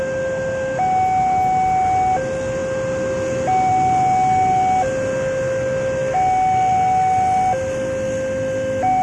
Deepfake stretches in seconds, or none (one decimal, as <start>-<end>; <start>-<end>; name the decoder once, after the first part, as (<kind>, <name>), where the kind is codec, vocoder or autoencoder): none